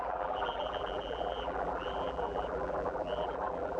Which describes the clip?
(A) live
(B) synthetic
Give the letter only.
B